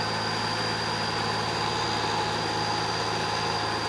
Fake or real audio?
real